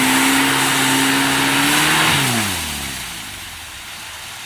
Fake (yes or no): no